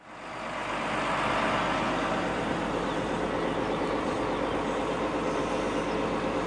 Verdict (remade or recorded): recorded